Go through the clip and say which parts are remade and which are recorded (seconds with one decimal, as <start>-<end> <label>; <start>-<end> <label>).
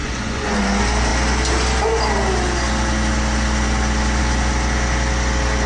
0.0-0.6 remade; 0.6-5.7 recorded